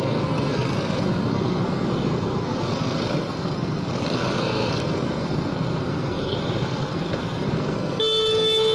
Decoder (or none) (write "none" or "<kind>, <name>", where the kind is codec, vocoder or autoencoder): codec, SNAC